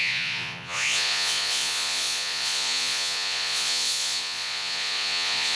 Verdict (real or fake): fake